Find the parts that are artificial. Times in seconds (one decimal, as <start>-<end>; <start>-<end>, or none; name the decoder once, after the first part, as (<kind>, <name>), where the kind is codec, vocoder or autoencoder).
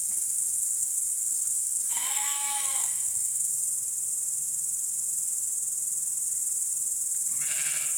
0.0-3.5 (codec, SNAC)